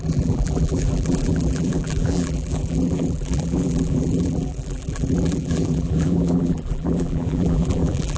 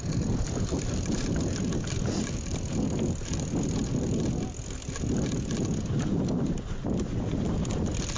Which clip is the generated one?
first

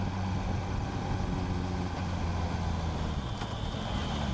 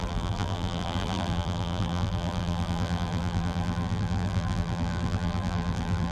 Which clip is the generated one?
second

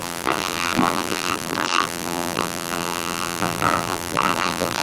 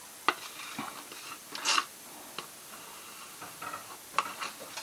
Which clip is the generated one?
first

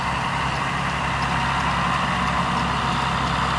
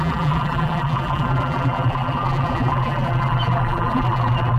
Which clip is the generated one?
second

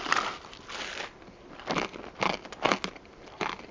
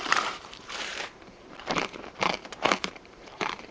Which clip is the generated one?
second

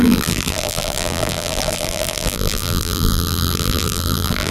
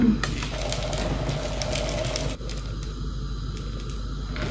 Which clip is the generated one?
first